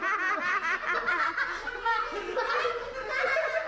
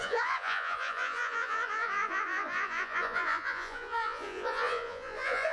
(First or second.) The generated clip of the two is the second